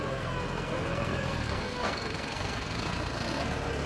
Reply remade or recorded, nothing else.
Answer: remade